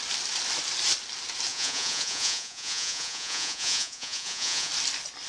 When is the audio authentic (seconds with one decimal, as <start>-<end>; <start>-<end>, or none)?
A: 0.0-1.5; 4.7-5.3